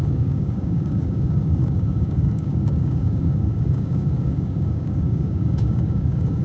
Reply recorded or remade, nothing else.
remade